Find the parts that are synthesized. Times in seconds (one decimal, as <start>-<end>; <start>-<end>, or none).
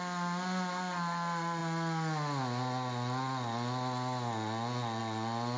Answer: none